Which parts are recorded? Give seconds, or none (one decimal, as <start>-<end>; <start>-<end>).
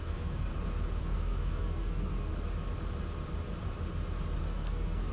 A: 0.5-1.0; 2.3-4.4